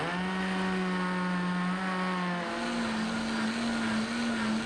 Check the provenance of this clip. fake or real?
real